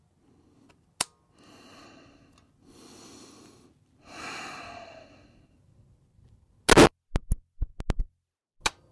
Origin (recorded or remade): recorded